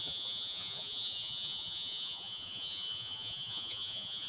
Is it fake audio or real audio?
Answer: fake